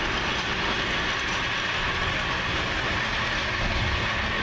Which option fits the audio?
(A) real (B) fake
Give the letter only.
A